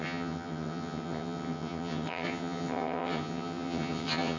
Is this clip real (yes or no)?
no